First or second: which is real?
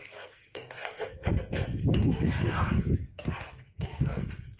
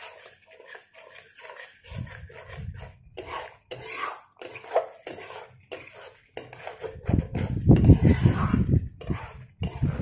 second